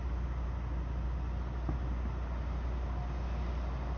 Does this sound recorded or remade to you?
recorded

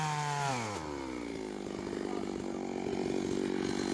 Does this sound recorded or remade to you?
recorded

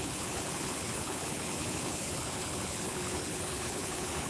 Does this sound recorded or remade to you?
remade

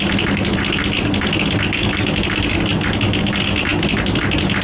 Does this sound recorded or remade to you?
recorded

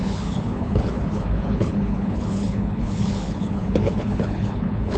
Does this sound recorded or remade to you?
remade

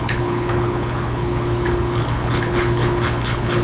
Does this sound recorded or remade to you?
remade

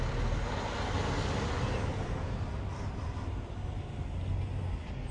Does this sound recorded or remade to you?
recorded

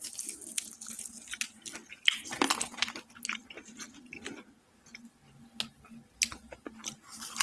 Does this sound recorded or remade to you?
recorded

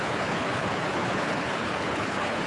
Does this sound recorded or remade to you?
remade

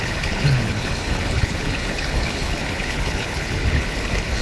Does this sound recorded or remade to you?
remade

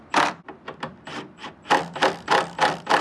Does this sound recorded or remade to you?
recorded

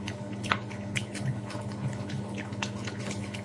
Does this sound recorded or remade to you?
remade